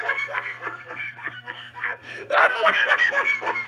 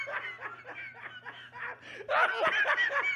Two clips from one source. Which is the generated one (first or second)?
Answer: first